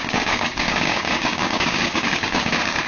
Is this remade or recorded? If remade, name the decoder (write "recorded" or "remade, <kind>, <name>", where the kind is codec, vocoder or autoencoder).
remade, codec, DAC